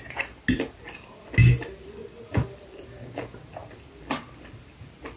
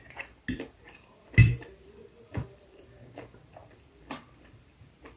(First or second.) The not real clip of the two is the second